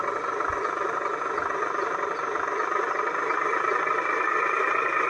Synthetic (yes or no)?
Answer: no